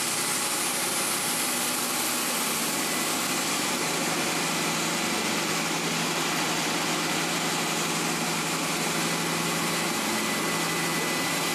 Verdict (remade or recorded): recorded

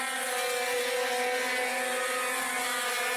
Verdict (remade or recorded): recorded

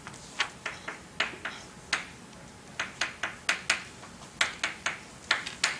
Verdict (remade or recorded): recorded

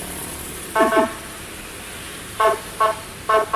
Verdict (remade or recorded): remade